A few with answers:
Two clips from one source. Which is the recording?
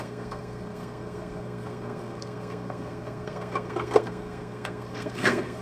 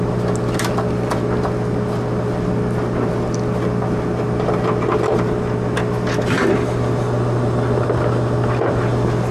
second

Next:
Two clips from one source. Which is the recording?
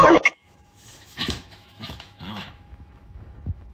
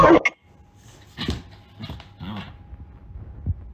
second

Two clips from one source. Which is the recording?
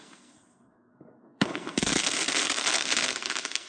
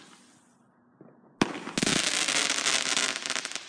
second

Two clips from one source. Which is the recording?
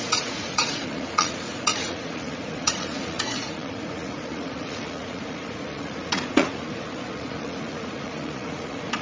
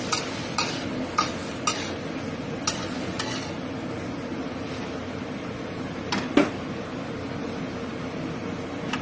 second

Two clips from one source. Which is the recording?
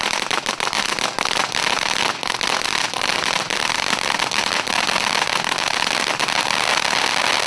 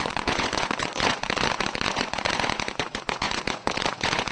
first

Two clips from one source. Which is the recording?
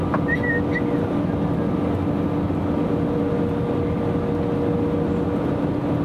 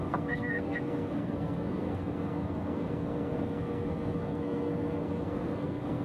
first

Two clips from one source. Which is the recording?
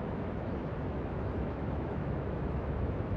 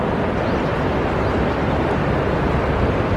second